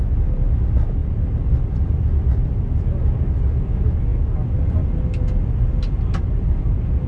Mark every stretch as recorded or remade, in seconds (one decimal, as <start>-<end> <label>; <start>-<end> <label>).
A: 0.0-7.1 recorded